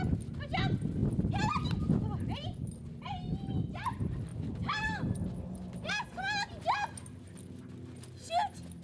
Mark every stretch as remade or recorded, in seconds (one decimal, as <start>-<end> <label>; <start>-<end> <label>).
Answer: 0.0-8.8 recorded